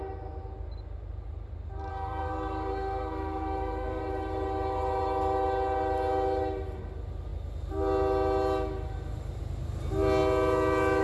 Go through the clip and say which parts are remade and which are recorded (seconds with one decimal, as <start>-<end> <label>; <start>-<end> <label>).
0.0-1.9 recorded; 1.9-4.0 remade; 4.0-11.0 recorded